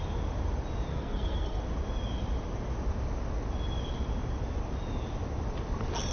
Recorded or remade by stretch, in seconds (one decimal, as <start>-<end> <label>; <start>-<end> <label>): 0.0-0.9 recorded; 0.9-1.6 remade; 1.6-6.1 recorded